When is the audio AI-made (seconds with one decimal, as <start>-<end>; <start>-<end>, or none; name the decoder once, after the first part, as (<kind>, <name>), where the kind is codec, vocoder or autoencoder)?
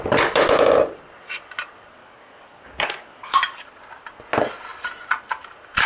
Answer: 2.0-3.7 (codec, DAC)